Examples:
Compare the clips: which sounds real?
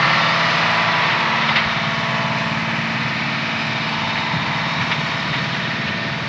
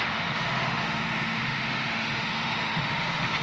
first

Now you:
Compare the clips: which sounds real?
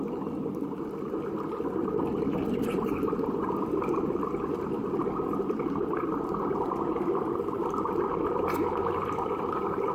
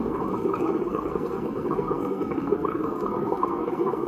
first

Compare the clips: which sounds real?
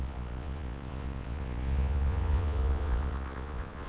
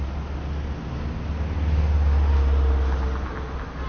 second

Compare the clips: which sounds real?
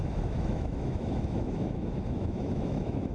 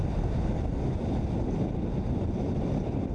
second